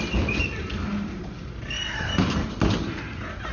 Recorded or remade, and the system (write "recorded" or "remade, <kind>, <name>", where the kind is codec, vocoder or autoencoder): remade, vocoder, BigVGAN v2